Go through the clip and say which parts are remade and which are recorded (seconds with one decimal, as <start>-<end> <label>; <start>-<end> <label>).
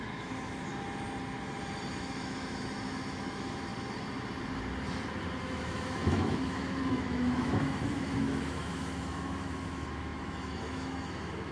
0.0-0.7 remade; 0.7-1.9 recorded; 1.9-3.7 remade; 3.7-5.4 recorded; 5.4-11.5 remade